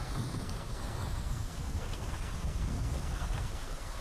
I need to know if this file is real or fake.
fake